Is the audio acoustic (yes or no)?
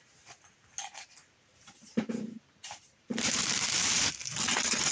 no